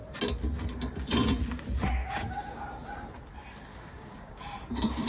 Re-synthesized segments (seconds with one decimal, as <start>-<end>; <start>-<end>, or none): 2.0-2.6; 3.7-4.4